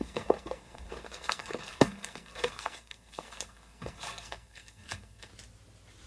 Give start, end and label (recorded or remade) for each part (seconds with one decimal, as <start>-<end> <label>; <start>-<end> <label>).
0.0-5.3 remade; 5.3-6.1 recorded